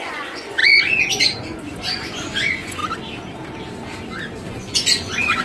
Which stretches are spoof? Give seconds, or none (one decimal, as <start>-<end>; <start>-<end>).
0.0-2.8; 4.5-5.4